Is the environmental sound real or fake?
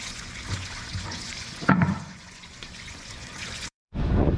fake